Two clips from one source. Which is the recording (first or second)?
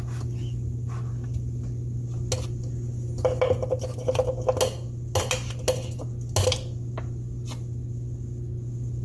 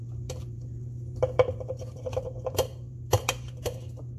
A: first